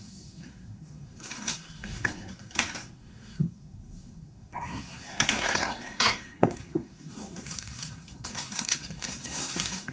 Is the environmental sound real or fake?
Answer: fake